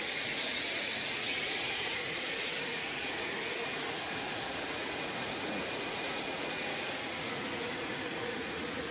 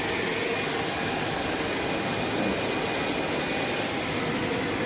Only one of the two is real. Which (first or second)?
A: second